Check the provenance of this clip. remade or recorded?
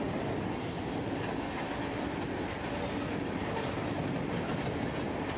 recorded